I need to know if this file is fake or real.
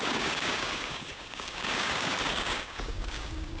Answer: fake